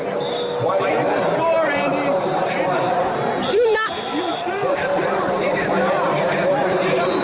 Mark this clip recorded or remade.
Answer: remade